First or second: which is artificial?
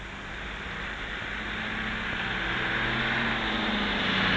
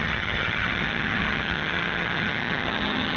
second